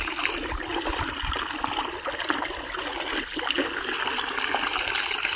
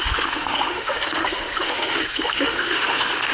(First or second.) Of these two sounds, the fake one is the second